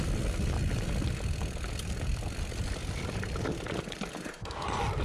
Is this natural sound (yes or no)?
yes